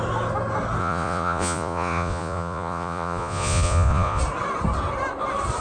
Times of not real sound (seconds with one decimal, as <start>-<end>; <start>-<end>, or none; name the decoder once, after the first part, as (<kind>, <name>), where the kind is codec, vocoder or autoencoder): 0.8-4.2 (vocoder, Vocos)